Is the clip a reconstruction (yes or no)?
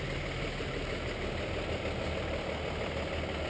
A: no